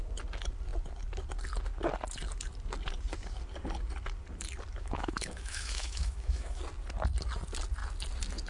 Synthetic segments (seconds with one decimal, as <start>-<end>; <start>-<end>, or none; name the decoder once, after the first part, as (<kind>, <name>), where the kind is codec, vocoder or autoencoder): 4.7-6.6 (autoencoder, DAC-VAE)